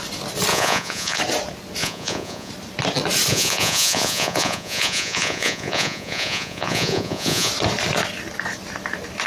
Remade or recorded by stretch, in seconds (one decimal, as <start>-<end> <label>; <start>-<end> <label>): 0.0-0.5 recorded; 0.5-1.2 remade; 1.2-1.8 recorded; 1.8-2.5 remade; 2.5-3.3 recorded; 3.3-7.5 remade; 7.5-9.3 recorded